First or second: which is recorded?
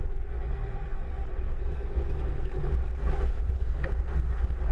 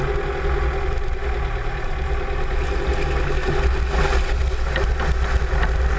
second